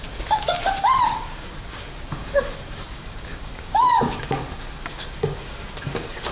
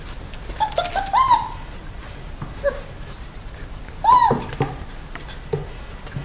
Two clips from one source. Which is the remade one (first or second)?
first